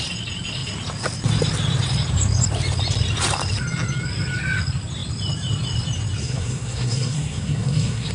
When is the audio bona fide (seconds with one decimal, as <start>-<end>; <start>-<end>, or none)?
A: 0.0-6.2